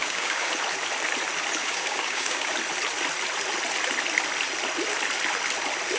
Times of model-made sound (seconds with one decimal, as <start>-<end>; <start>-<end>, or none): 0.0-0.5; 1.6-2.5